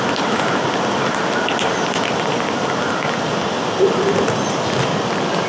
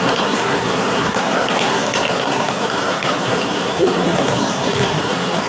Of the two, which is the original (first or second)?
first